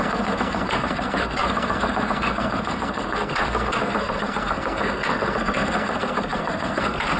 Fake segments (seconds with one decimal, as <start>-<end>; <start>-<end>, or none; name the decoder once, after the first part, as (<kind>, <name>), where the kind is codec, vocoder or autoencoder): 0.0-7.2 (codec, SNAC)